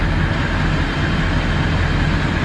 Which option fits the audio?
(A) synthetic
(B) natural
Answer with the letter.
B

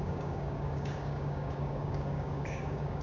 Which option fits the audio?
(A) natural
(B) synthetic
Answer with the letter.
B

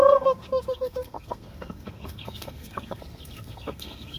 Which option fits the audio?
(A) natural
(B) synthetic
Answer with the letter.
B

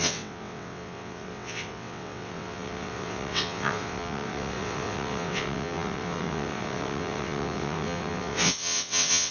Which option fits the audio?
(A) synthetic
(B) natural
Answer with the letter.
A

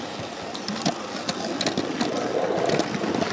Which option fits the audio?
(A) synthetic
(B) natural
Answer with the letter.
B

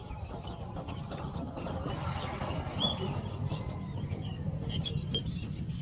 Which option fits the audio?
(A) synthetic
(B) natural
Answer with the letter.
B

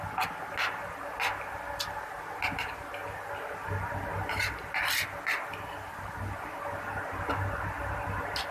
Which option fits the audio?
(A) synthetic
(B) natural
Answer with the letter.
B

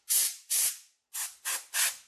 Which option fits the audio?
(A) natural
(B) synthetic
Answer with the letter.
A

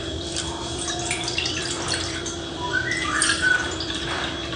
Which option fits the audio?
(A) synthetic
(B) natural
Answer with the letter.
B